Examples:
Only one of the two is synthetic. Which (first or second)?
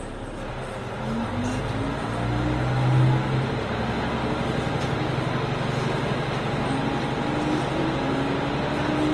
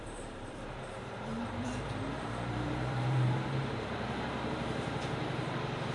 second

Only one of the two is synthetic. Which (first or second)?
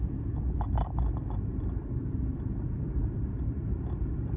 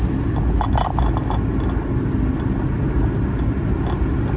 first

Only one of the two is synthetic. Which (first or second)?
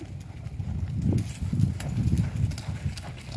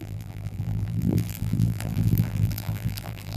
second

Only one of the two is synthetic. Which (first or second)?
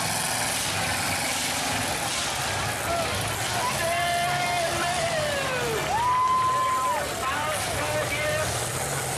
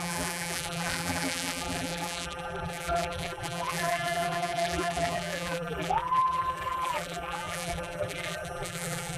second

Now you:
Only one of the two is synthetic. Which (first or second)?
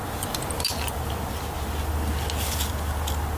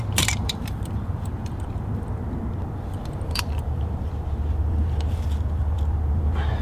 second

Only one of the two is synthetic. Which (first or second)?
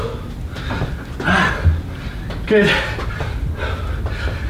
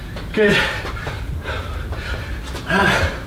second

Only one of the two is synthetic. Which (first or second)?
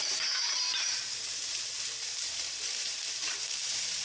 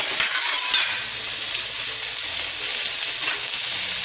first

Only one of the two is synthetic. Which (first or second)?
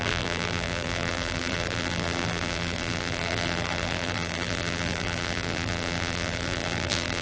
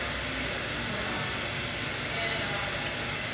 first